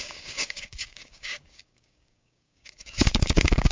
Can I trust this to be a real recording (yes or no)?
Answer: no